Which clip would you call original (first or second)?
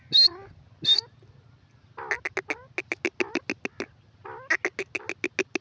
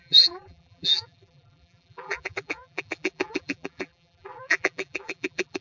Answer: first